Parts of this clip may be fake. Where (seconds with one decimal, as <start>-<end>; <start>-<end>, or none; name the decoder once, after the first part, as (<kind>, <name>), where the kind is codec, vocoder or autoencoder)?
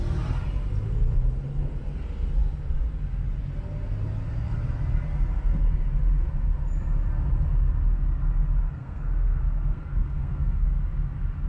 8.8-10.8 (codec, SNAC)